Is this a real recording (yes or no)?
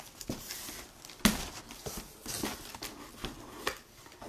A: yes